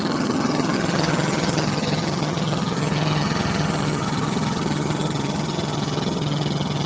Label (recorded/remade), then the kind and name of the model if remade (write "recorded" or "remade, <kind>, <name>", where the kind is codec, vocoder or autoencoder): remade, vocoder, HiFi-GAN